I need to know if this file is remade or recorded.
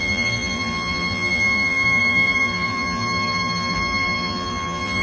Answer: remade